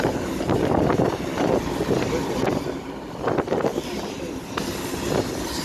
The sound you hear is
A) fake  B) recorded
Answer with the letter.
A